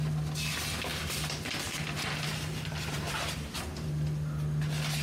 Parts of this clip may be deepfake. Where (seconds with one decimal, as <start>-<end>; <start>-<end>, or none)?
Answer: 0.9-3.9